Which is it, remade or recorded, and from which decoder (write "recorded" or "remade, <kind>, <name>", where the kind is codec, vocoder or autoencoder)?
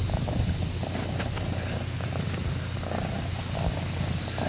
recorded